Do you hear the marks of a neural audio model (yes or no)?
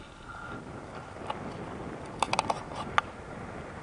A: no